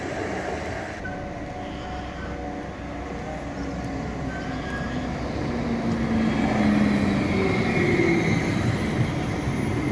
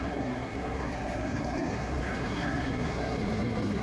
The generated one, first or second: second